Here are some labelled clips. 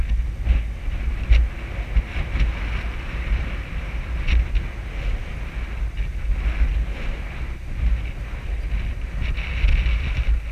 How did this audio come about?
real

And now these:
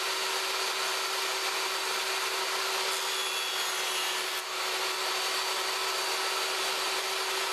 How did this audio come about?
real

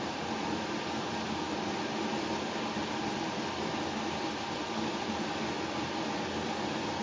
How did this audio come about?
real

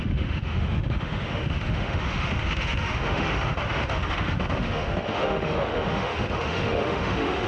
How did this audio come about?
fake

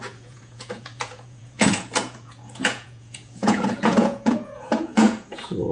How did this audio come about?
fake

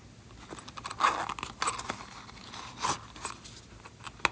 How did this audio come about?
real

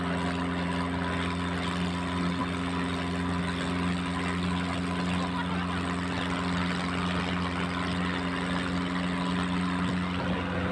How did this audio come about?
real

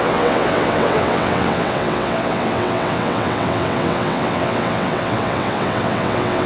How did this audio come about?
fake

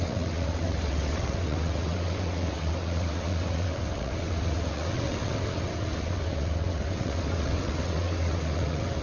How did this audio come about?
fake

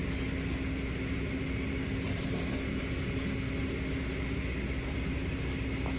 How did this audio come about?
real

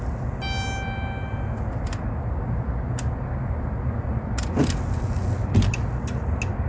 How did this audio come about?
real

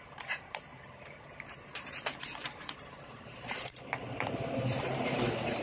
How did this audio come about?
fake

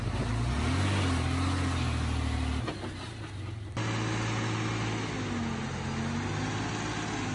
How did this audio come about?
real